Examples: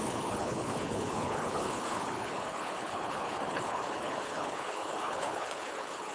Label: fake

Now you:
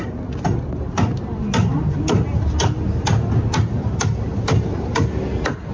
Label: real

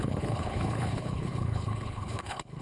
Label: fake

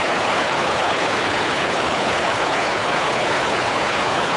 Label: fake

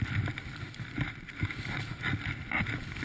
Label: real